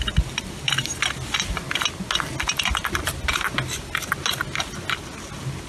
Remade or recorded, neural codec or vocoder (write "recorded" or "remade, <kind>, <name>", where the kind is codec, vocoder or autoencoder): recorded